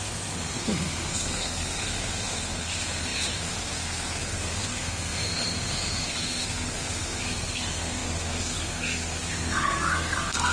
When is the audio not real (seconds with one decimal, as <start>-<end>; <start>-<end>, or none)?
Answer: 0.0-10.5